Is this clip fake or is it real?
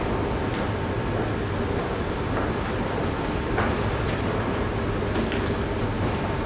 real